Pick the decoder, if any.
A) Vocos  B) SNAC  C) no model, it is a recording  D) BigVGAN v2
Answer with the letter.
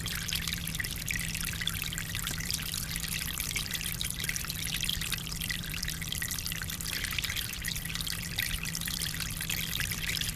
D